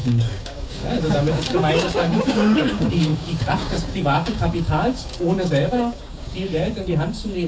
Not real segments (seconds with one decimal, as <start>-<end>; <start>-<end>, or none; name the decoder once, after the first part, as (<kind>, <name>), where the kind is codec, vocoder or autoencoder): 0.0-7.5 (codec, DAC)